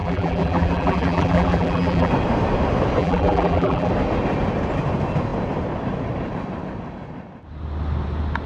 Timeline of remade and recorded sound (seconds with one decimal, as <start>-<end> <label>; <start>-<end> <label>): 0.0-2.1 remade; 2.1-3.0 recorded; 3.0-3.9 remade; 3.9-8.5 recorded